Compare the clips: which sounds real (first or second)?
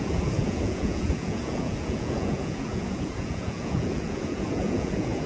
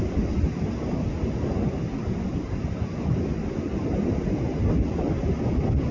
second